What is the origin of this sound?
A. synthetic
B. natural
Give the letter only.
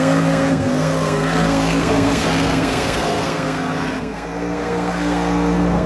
A